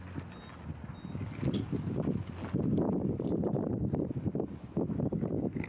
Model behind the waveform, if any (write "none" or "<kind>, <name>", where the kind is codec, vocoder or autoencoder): none